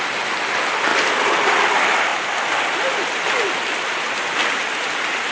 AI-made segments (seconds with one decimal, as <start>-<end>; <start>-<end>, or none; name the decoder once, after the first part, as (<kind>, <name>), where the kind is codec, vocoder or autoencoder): 0.9-1.6 (vocoder, BigVGAN v2)